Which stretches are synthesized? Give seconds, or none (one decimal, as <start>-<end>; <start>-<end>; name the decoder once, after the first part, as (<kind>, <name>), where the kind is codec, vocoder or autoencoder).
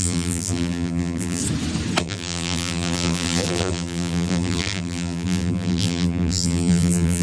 0.0-1.4 (vocoder, BigVGAN v2); 2.0-7.2